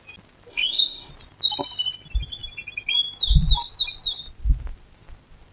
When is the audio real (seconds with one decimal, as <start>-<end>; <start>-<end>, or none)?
0.0-0.5; 1.1-5.5